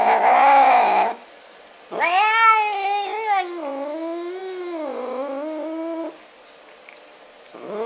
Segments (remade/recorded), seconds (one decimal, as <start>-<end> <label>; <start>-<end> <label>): 0.0-7.9 recorded